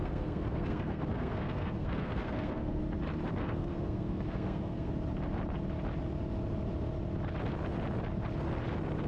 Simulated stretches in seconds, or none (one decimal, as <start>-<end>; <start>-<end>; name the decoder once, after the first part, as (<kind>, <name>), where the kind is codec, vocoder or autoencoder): 0.0-2.8 (codec, SNAC); 3.4-4.9